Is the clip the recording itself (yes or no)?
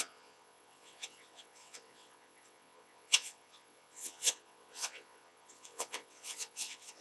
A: no